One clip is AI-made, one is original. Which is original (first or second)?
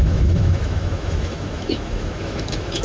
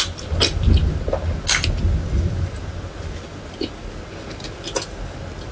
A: second